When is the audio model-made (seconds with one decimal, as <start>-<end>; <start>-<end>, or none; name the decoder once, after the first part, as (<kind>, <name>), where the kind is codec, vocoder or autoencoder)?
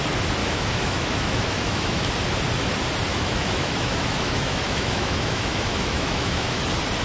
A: 0.4-2.1 (autoencoder, DAC-VAE); 3.1-6.6